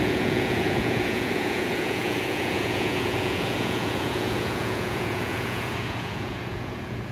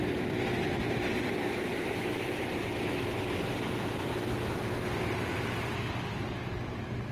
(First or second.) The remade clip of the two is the first